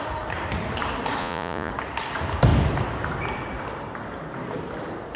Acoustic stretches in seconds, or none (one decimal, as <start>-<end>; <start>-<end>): 0.0-1.2; 1.7-5.2